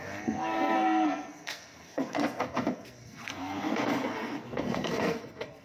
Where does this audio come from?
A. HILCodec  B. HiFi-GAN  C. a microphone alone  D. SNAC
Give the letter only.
D